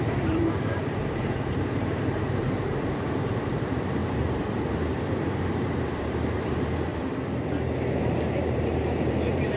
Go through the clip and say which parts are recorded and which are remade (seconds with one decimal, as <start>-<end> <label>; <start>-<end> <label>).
0.0-6.9 remade; 6.9-8.3 recorded; 8.3-9.6 remade